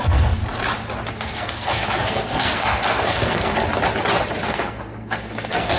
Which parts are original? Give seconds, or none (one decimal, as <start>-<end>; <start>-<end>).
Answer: 0.4-1.1; 3.5-4.4